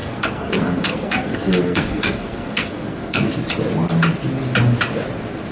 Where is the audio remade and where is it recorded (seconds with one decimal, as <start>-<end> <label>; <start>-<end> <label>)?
0.0-3.3 remade; 3.3-5.5 recorded